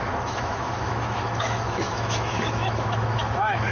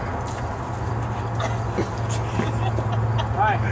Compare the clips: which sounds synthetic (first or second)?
first